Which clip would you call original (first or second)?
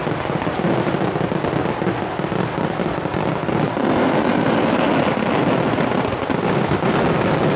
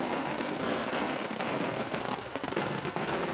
first